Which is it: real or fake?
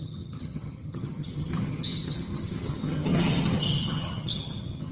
fake